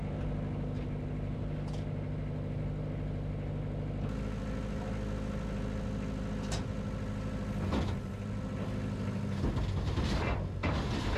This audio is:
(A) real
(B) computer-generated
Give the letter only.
A